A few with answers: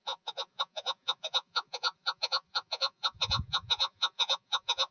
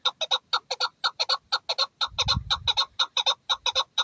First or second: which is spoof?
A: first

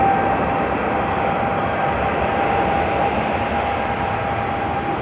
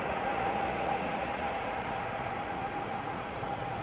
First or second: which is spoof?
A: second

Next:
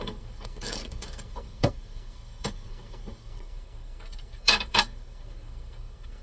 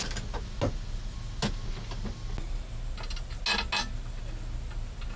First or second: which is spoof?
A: first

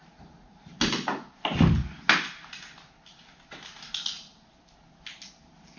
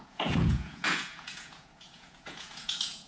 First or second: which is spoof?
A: second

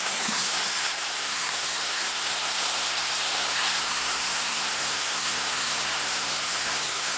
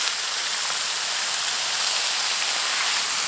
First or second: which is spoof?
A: first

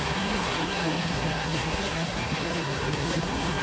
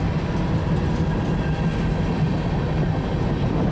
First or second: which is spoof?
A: first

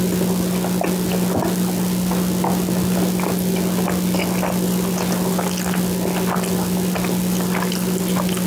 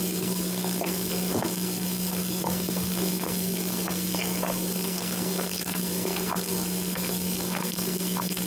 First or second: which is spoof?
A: second